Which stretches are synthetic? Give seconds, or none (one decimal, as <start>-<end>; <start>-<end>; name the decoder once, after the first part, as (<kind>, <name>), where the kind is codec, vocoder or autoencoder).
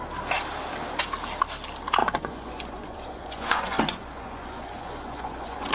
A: 2.0-5.7 (vocoder, Vocos)